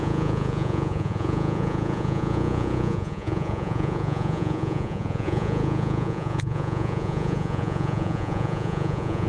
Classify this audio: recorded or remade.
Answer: remade